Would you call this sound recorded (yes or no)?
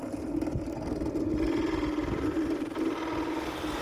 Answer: yes